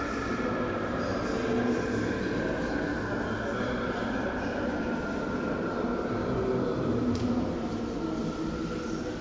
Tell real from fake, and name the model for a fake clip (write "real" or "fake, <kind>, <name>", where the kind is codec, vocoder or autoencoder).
real